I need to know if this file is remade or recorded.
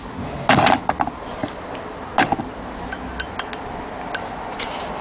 recorded